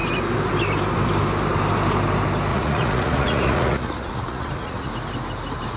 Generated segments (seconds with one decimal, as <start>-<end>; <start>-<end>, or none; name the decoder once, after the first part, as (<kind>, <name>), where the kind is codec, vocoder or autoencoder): 2.5-4.9 (vocoder, Vocos)